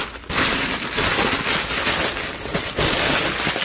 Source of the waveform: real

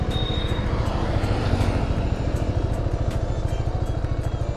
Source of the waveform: real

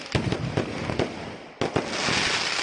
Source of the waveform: real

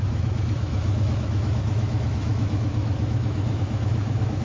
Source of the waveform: fake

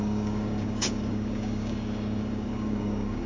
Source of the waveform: fake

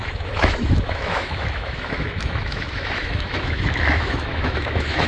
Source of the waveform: fake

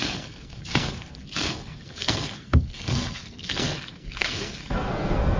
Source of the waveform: fake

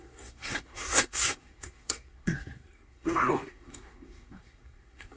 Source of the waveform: fake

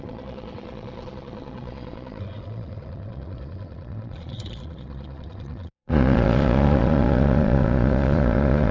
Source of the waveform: fake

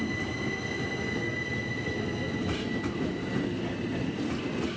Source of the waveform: real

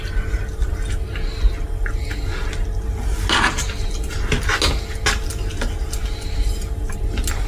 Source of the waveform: real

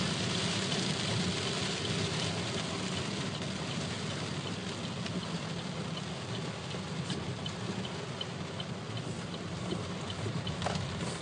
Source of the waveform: real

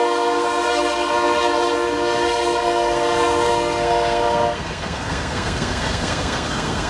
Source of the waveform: fake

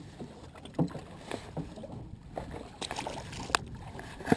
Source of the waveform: real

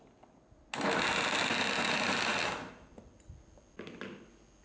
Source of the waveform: real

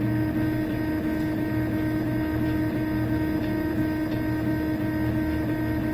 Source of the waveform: real